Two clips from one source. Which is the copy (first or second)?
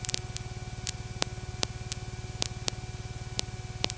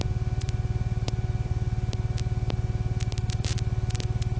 second